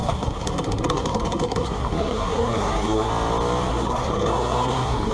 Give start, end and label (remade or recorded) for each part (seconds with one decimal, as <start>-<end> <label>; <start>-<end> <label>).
0.0-3.1 remade; 3.1-3.7 recorded; 3.7-5.1 remade